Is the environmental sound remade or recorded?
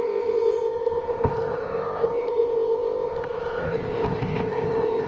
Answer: remade